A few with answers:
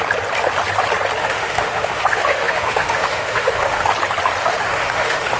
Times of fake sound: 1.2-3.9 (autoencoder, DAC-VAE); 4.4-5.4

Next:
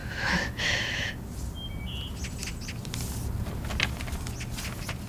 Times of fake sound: 0.0-1.1 (autoencoder, DAC-VAE)

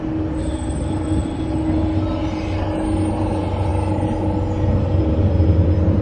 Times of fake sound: none

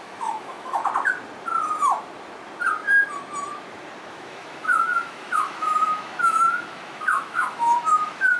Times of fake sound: 0.0-0.8 (autoencoder, DAC-VAE); 4.1-8.4

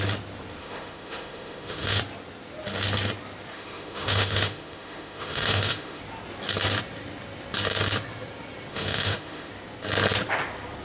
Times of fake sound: 0.6-2.0 (autoencoder, DAC-VAE); 3.5-6.0; 8.7-9.5

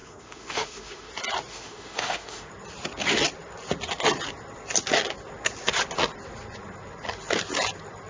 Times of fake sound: 0.0-1.1 (autoencoder, DAC-VAE); 1.5-2.5

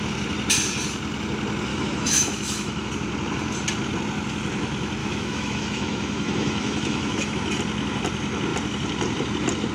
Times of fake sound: 1.7-2.9 (autoencoder, DAC-VAE); 5.0-7.6

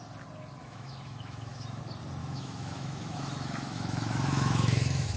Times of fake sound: 0.6-1.8 (autoencoder, DAC-VAE); 2.2-5.2